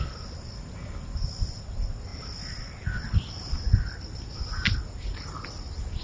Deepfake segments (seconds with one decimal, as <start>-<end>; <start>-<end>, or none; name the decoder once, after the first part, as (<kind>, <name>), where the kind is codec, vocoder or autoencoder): none